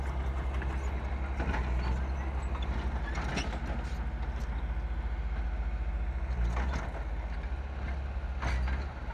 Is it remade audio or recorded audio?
recorded